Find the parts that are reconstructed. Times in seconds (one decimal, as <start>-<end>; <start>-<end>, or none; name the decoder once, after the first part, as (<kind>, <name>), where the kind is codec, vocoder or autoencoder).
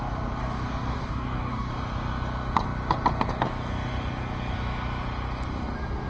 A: 0.4-1.7 (codec, DAC)